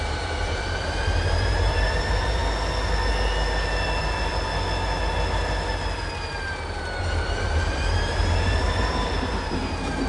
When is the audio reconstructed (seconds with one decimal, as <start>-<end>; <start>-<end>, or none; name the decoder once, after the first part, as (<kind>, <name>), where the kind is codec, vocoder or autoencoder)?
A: 0.0-2.4 (vocoder, BigVGAN v2); 4.0-4.5; 7.0-10.1